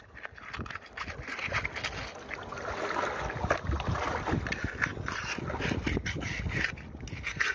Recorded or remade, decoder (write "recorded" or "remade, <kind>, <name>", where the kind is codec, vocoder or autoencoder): recorded